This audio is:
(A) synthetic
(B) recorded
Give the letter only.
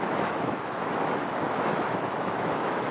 A